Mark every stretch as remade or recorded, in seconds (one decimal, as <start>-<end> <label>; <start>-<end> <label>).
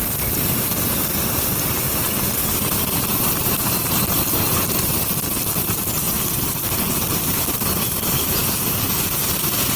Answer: 0.0-3.1 recorded; 3.1-5.1 remade; 5.1-9.8 recorded